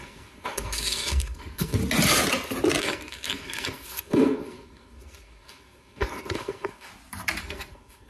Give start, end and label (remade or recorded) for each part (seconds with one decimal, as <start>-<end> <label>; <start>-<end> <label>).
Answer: 0.0-1.8 remade; 1.8-2.8 recorded; 2.8-6.9 remade; 6.9-7.4 recorded; 7.4-8.1 remade